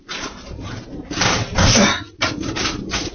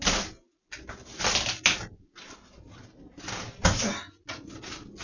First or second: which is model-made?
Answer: first